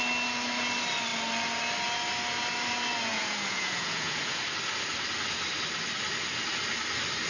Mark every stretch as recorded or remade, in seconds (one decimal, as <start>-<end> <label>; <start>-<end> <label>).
0.0-3.1 recorded; 3.1-4.4 remade; 4.4-7.3 recorded